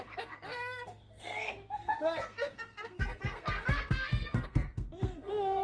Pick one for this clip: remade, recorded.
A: remade